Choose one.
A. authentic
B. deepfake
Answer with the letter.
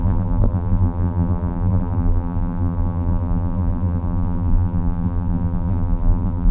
B